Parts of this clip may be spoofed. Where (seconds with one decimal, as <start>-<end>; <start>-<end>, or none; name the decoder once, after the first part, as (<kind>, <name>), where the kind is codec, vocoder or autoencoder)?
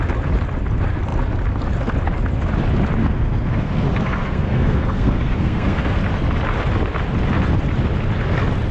3.0-6.0 (codec, SNAC)